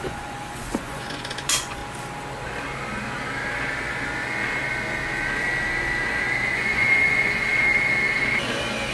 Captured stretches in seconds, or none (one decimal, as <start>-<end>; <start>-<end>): 1.8-6.5; 7.5-8.9